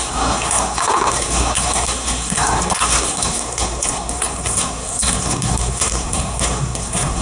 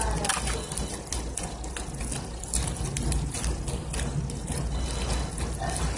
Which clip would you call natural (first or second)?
second